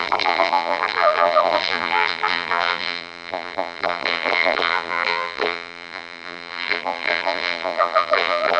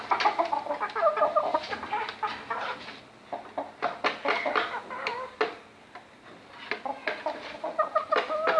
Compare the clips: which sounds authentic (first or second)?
second